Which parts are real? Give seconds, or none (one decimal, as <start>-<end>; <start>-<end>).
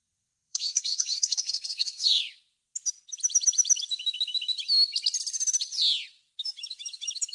2.2-7.3